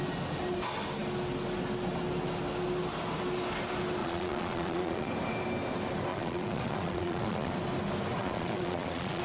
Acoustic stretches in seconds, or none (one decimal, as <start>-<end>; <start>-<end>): 0.0-4.0; 5.1-6.1; 7.5-8.2

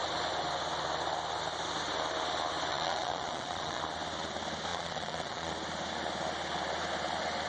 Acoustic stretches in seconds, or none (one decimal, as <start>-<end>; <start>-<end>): 0.0-2.7; 3.8-4.7; 5.5-7.5

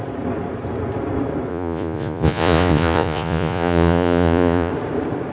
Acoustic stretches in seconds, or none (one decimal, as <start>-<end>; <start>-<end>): 0.0-1.5; 4.7-5.3

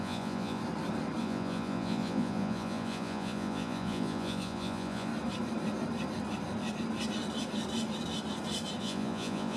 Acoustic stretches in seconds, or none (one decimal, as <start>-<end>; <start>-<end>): 0.6-1.2; 5.1-8.8

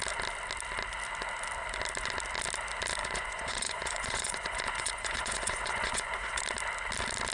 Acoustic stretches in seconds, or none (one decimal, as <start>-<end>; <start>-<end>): 0.0-3.0; 6.4-7.3

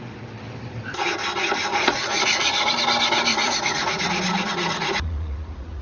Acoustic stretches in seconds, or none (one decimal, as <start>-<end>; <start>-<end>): 0.0-1.7; 2.7-3.3

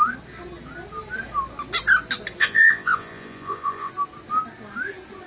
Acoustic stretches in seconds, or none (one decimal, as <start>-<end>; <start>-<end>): 0.0-2.4; 3.9-5.3

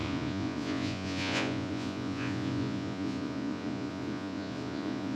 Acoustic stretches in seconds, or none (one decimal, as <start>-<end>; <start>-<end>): none